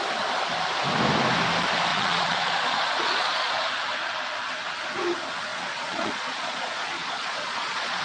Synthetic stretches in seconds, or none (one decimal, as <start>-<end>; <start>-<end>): 1.9-3.5; 5.5-8.0